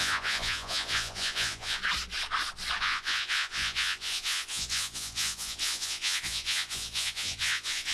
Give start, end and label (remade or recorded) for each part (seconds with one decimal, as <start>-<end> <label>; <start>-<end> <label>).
0.0-1.8 remade; 1.8-2.8 recorded; 2.8-7.9 remade